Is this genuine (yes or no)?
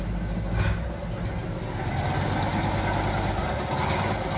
yes